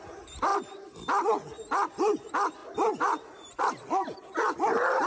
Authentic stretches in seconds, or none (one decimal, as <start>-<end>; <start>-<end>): 0.0-2.6; 3.6-5.1